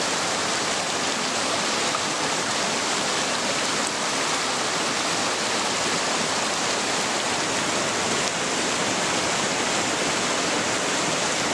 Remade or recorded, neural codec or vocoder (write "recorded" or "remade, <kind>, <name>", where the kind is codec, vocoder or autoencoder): recorded